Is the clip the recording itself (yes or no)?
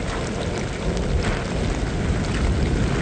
yes